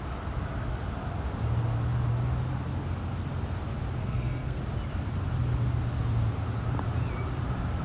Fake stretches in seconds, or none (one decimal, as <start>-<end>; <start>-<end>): 4.0-4.6